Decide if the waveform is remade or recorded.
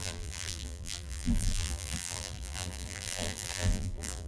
remade